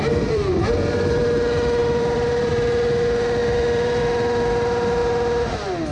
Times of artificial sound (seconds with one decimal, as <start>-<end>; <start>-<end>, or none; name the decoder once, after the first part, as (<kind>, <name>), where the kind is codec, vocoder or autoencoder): 0.0-1.2 (vocoder, BigVGAN v2); 1.8-2.5; 3.4-4.0